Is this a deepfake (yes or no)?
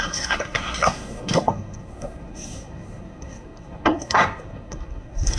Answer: yes